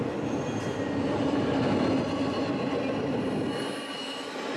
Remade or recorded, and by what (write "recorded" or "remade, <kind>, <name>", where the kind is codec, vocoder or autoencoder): recorded